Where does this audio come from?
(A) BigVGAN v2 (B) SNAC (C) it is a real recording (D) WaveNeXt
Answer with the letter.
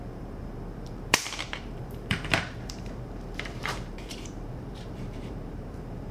A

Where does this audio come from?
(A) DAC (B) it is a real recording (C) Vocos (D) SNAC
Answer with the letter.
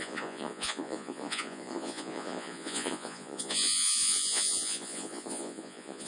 C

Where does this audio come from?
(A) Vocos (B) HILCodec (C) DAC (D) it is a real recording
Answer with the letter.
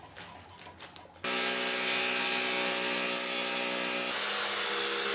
D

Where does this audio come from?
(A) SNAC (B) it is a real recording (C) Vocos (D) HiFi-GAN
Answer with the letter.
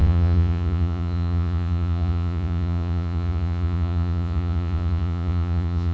C